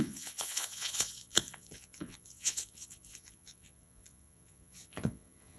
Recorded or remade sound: remade